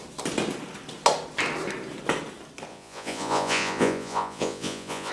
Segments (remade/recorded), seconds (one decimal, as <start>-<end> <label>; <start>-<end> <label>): 0.0-2.7 recorded; 2.7-5.1 remade